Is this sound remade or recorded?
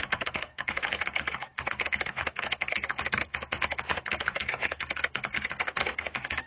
remade